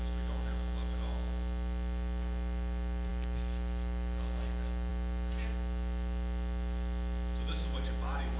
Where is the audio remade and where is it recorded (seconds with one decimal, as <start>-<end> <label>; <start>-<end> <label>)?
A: 0.0-8.4 recorded